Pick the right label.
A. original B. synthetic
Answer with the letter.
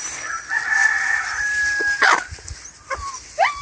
A